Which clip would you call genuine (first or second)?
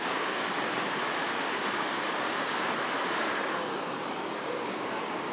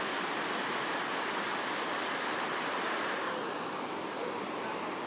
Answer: second